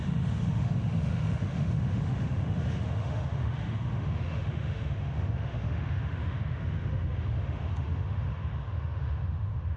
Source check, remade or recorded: remade